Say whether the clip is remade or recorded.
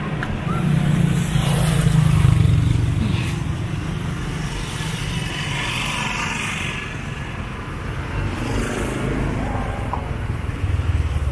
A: recorded